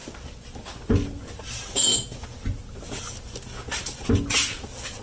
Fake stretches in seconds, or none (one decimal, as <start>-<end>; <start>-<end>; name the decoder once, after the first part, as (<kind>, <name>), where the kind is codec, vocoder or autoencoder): none